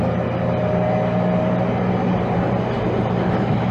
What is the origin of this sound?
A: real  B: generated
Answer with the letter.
A